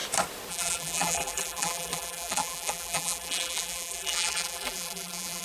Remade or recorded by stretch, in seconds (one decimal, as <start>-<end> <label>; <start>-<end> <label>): 0.0-0.5 recorded; 0.5-5.4 remade